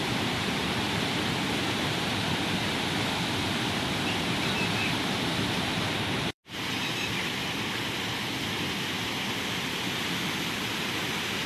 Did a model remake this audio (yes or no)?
yes